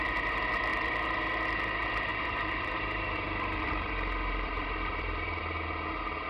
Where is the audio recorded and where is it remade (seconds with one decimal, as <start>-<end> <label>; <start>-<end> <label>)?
0.0-0.7 recorded; 0.7-1.2 remade; 1.2-2.1 recorded; 2.1-5.4 remade; 5.4-6.3 recorded